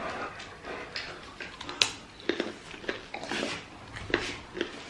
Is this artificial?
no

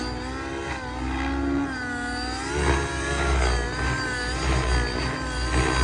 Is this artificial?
no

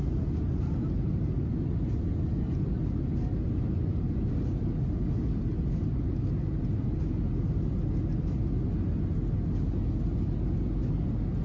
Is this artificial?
no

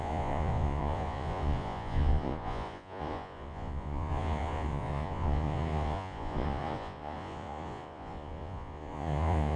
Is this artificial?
yes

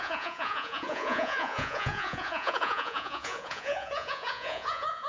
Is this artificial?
yes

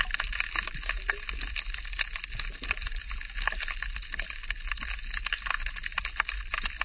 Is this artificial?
no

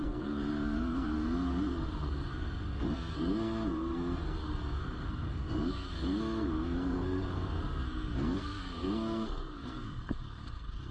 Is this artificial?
yes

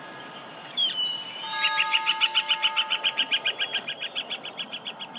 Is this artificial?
yes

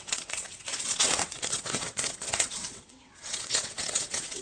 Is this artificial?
yes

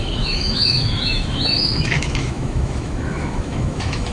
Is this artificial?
yes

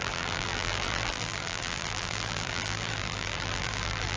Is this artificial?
yes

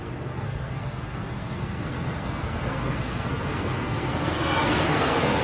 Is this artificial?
yes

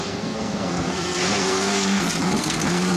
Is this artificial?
yes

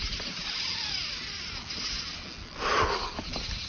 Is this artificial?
no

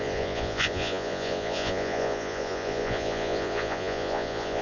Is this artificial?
yes